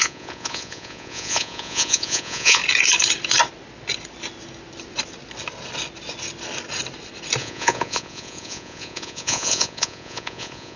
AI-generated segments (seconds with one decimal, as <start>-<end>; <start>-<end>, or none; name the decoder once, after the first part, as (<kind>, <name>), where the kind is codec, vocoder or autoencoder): 0.0-2.6 (vocoder, Vocos); 7.4-10.8